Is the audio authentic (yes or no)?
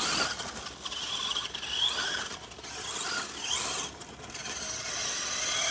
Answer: yes